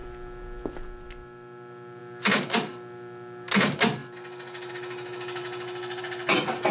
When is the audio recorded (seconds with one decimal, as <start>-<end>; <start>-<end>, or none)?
0.0-6.7